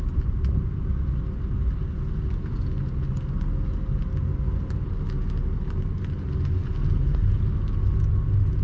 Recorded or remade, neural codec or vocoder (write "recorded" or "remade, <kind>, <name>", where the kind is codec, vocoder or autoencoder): recorded